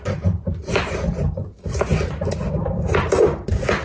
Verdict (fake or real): fake